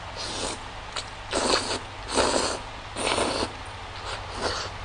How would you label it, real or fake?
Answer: real